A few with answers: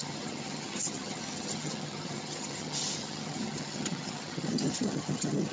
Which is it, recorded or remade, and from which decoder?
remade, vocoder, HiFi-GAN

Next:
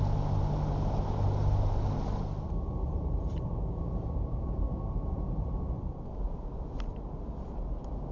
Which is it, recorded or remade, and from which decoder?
recorded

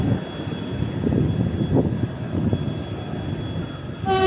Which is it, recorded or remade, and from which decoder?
recorded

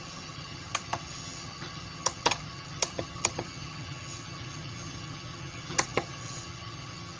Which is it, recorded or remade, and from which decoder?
remade, vocoder, HiFi-GAN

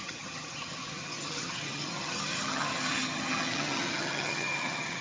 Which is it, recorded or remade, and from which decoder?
remade, vocoder, HiFi-GAN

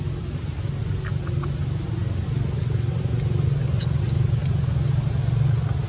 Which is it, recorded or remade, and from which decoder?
recorded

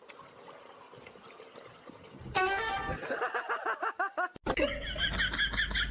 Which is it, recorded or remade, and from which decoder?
recorded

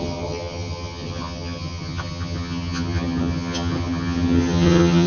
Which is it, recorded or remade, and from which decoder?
remade, vocoder, HiFi-GAN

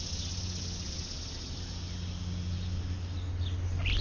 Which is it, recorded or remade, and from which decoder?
recorded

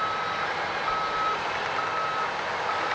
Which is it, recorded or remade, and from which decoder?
recorded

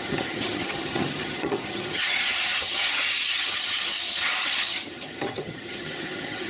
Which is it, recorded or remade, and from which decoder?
remade, vocoder, HiFi-GAN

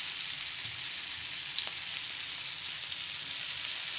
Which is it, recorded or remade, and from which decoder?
recorded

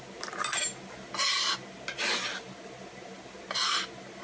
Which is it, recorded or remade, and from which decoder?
recorded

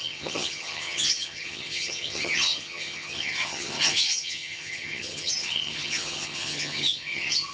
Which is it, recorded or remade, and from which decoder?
remade, vocoder, HiFi-GAN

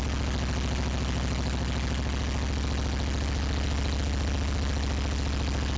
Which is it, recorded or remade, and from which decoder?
recorded